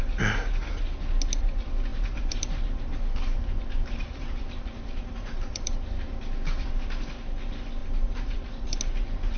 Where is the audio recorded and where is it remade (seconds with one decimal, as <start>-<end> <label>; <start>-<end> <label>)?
0.0-1.9 recorded; 1.9-6.7 remade; 6.7-7.8 recorded; 7.8-8.8 remade; 8.8-9.4 recorded